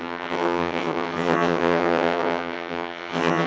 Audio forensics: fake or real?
fake